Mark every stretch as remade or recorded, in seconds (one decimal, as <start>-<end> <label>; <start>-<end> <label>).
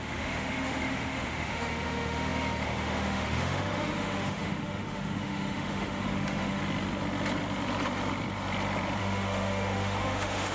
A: 0.0-6.6 remade; 6.6-9.0 recorded; 9.0-10.5 remade